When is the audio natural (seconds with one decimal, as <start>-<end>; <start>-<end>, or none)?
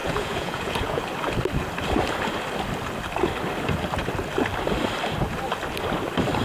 1.0-6.4